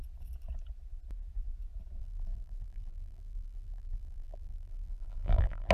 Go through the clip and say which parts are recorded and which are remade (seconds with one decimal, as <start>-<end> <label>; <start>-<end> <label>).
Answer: 0.0-2.0 recorded; 2.0-5.7 remade